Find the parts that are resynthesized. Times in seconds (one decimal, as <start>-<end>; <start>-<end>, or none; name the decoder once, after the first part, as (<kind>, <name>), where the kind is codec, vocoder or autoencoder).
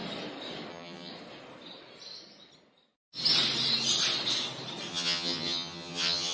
0.7-1.1 (vocoder, HiFi-GAN); 4.9-6.3